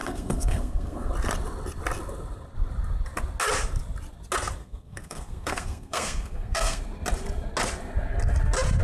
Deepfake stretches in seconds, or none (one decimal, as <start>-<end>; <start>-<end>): 0.0-1.1; 4.6-6.8